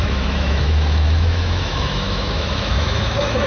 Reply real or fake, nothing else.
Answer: fake